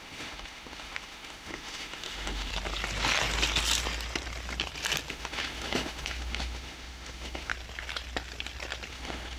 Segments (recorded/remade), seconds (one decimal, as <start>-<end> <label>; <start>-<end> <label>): 0.0-2.5 remade; 2.5-5.1 recorded; 5.1-7.5 remade; 7.5-8.9 recorded; 8.9-9.4 remade